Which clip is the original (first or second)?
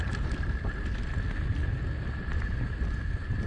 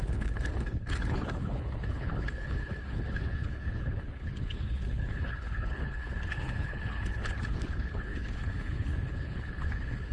first